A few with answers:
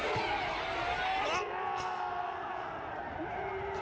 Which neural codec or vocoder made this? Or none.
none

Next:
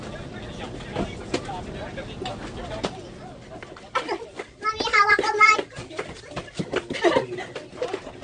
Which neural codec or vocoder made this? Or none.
none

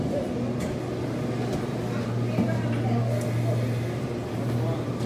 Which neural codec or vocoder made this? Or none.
none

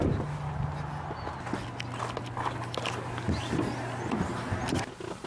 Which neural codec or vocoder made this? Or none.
none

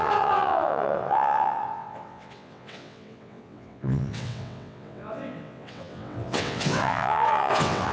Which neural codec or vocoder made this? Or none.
vocoder, WaveNeXt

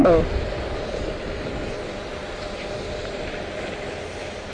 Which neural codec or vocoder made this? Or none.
vocoder, BigVGAN v2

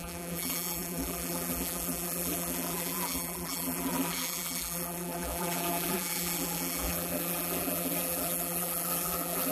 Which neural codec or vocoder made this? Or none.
vocoder, BigVGAN v2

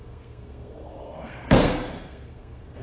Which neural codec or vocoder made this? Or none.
codec, SNAC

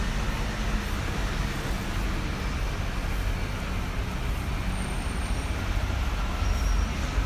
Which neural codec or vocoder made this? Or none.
none